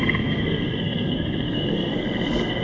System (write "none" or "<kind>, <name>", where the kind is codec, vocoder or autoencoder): codec, SNAC